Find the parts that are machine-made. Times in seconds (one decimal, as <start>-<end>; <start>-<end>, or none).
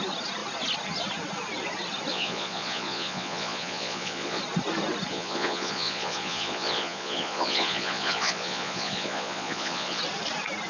2.1-4.4; 5.1-10.0